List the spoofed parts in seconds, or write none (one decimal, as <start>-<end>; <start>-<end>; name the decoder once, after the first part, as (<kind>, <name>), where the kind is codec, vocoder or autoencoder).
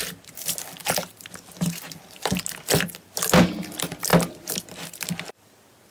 none